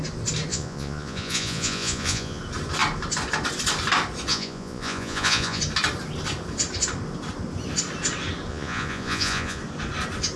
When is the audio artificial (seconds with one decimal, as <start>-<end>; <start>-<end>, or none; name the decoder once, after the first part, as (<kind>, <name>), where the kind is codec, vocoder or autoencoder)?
0.5-2.4 (vocoder, Vocos); 4.3-5.6; 8.5-9.6